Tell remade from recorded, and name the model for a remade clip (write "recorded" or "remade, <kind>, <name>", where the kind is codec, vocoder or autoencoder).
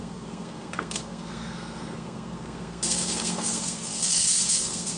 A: remade, codec, SNAC